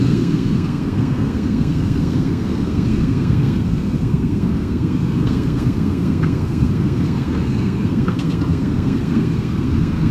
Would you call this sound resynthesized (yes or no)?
yes